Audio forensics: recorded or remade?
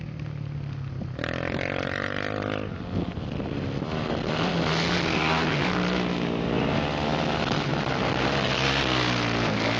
recorded